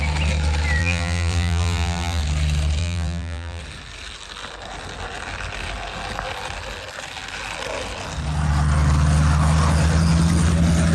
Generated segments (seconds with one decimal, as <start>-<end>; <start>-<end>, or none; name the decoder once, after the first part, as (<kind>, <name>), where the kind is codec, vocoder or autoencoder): 0.8-2.2 (vocoder, BigVGAN v2); 2.8-3.6